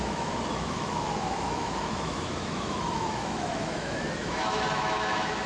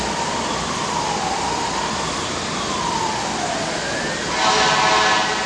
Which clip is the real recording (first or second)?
second